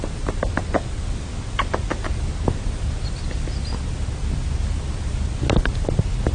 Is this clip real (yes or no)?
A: yes